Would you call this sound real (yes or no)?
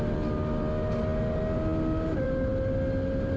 yes